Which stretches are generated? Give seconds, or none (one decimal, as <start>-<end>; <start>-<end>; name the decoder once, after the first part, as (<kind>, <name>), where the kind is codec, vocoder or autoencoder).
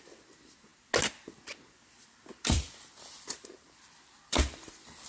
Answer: 2.3-5.1 (vocoder, BigVGAN v2)